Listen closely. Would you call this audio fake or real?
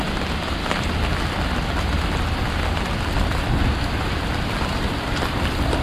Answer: real